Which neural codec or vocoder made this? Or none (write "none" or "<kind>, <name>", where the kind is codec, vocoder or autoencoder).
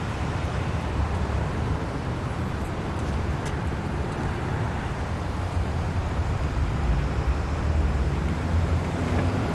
vocoder, BigVGAN v2